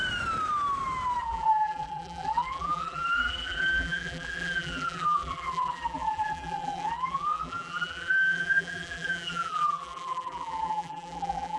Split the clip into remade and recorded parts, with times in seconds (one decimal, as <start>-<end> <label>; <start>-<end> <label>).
0.0-1.2 recorded; 1.2-11.6 remade

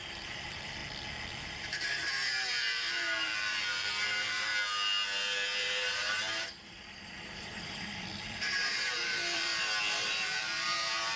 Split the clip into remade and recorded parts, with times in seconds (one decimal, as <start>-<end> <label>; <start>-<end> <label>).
0.0-0.8 remade; 0.8-1.4 recorded; 1.4-4.5 remade; 4.5-5.6 recorded; 5.6-9.5 remade; 9.5-10.1 recorded; 10.1-11.2 remade

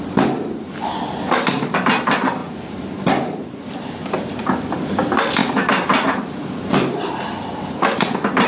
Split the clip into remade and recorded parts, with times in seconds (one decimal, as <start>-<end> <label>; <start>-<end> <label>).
0.0-2.4 recorded; 2.4-4.7 remade; 4.7-5.4 recorded; 5.4-6.9 remade; 6.9-8.5 recorded

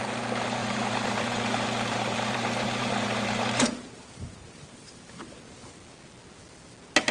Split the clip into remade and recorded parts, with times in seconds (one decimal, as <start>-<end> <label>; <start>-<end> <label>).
0.0-0.6 recorded; 0.6-4.9 remade; 4.9-7.1 recorded